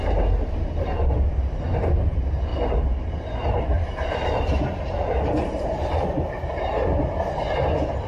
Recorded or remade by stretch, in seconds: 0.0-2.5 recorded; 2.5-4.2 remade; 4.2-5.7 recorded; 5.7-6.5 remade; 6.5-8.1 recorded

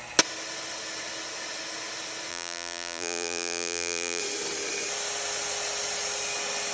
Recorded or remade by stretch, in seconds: 0.0-2.3 recorded; 2.3-4.2 remade; 4.2-6.7 recorded

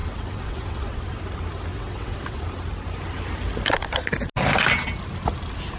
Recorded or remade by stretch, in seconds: 0.0-1.2 remade; 1.2-1.7 recorded; 1.7-2.4 remade; 2.4-5.8 recorded

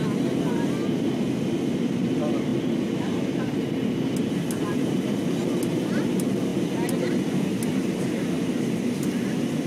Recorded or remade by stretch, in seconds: 0.0-9.7 recorded

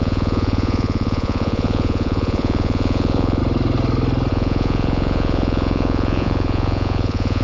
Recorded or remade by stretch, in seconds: 0.0-3.4 remade; 3.4-4.3 recorded; 4.3-7.4 remade

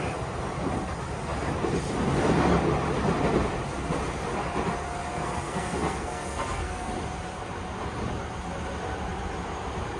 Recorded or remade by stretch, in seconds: 0.0-5.1 recorded; 5.1-6.9 remade; 6.9-10.0 recorded

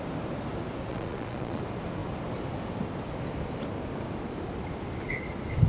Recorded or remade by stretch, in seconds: 0.0-0.9 recorded; 0.9-1.6 remade; 1.6-5.7 recorded